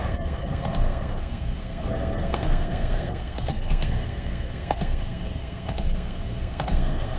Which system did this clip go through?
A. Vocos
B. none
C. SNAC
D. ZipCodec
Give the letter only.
C